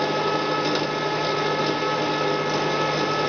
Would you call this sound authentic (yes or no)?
yes